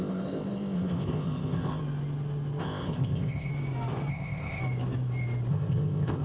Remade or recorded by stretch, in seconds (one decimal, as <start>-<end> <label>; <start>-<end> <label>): 0.0-1.8 remade; 1.8-2.6 recorded; 2.6-3.5 remade; 3.5-4.1 recorded; 4.1-4.6 remade; 4.6-5.5 recorded; 5.5-6.2 remade